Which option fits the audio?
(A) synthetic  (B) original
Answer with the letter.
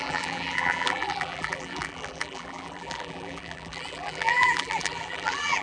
A